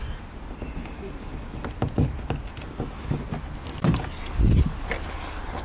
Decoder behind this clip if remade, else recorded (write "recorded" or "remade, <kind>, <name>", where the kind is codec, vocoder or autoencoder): recorded